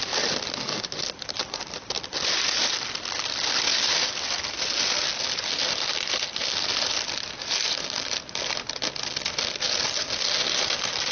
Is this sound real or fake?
real